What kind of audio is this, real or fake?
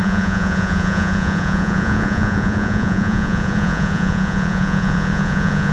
fake